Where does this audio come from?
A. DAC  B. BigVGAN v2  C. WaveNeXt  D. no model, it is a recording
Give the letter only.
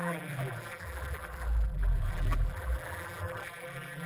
B